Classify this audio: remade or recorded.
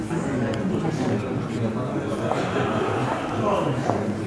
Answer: recorded